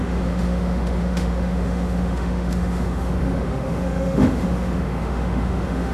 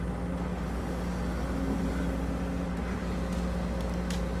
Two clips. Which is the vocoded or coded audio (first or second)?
first